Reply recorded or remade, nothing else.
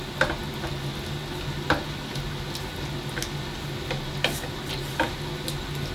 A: recorded